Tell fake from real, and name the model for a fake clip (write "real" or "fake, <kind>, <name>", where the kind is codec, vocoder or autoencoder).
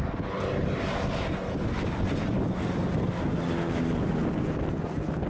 real